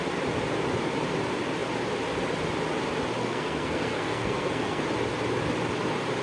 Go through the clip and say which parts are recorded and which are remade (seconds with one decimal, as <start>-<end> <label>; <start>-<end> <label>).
0.0-3.2 recorded; 3.2-4.8 remade; 4.8-6.2 recorded